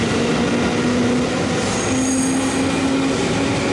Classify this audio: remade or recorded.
recorded